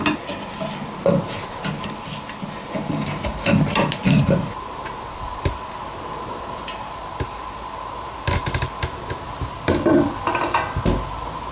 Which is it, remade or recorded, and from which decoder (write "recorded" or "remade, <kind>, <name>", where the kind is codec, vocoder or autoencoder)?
recorded